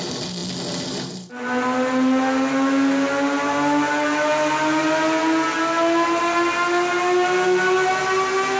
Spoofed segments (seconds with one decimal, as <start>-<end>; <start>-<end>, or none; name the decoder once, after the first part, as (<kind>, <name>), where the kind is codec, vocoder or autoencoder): none